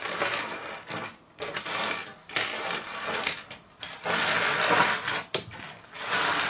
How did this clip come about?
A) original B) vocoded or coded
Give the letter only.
A